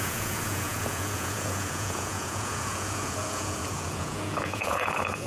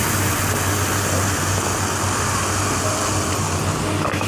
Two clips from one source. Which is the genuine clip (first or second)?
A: second